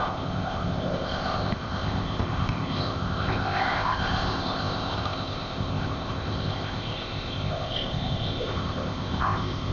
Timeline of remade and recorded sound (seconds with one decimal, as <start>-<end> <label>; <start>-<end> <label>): 0.0-9.7 remade

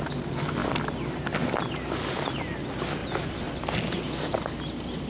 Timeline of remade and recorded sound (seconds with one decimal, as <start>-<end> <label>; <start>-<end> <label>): 0.0-3.0 recorded; 3.0-3.5 remade; 3.5-5.1 recorded

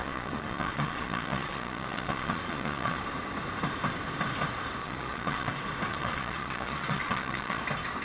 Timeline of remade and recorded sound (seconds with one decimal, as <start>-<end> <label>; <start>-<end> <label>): 0.0-3.0 remade; 3.0-4.8 recorded; 4.8-5.5 remade; 5.5-5.9 recorded; 5.9-7.6 remade; 7.6-8.0 recorded

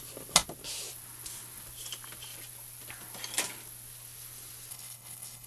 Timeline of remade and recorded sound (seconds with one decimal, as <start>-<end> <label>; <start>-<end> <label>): 0.0-4.7 recorded; 4.7-5.5 remade

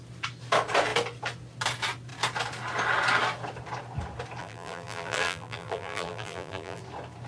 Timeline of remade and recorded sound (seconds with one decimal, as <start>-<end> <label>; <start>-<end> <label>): 0.0-4.4 recorded; 4.4-6.8 remade; 6.8-7.3 recorded

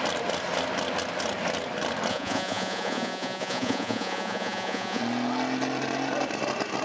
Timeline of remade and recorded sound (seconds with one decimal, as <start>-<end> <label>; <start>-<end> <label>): 0.0-2.1 recorded; 2.1-5.0 remade; 5.0-6.8 recorded

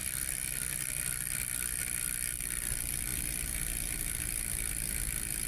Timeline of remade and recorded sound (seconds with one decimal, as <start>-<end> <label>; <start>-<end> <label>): 0.0-5.5 remade

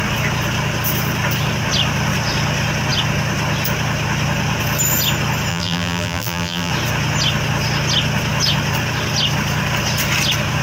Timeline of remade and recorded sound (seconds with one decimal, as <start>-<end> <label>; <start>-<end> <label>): 0.0-5.5 recorded; 5.5-6.7 remade; 6.7-10.6 recorded